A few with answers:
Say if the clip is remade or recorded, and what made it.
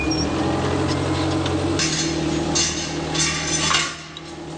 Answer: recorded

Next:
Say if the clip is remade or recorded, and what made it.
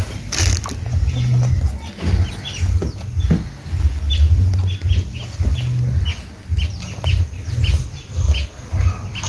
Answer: recorded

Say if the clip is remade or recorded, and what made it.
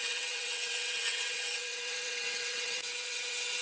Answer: remade, vocoder, WaveNeXt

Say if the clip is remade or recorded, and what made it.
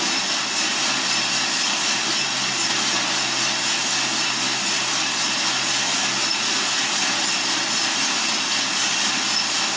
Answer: recorded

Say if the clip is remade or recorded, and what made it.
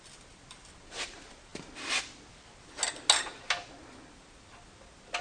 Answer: recorded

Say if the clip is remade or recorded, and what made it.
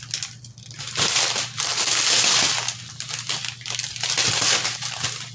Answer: recorded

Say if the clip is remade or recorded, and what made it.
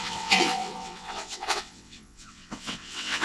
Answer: remade, vocoder, WaveNeXt